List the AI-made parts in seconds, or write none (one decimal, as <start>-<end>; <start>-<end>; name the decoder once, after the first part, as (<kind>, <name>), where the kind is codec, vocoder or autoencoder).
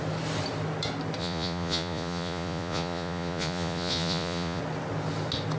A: 1.2-4.6 (vocoder, Vocos)